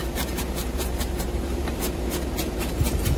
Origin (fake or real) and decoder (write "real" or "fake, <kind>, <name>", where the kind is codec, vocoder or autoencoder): fake, vocoder, BigVGAN v2